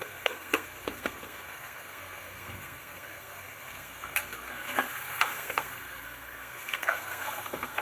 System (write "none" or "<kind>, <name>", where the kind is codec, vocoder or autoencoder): codec, SNAC